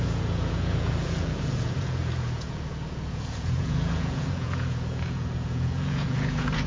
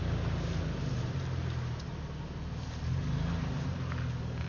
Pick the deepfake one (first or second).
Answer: first